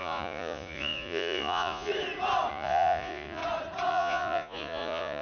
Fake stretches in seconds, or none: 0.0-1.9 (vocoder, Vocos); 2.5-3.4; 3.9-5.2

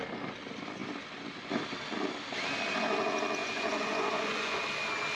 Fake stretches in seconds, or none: 3.4-4.6 (vocoder, Vocos)

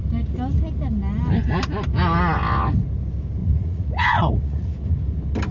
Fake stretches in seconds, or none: 3.4-4.9 (vocoder, Vocos)

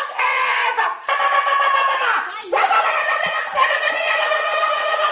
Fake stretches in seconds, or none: 0.0-0.6 (vocoder, Vocos); 3.7-5.1

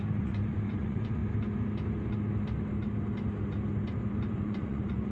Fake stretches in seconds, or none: 0.0-1.2 (vocoder, Vocos); 4.3-5.1

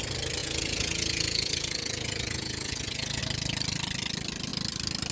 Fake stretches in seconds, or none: 0.4-3.2 (vocoder, Vocos)